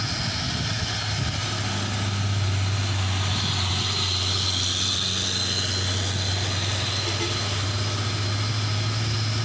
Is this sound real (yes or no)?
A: yes